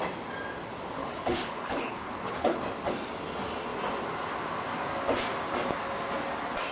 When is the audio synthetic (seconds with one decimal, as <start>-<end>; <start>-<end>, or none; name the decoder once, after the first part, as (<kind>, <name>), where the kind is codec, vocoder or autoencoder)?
1.0-2.6 (codec, HILCodec)